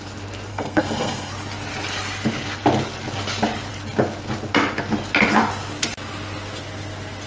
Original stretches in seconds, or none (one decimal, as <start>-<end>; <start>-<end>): 0.0-0.5; 1.3-7.3